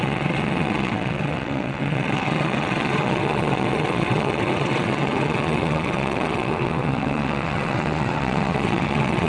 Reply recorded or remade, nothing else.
remade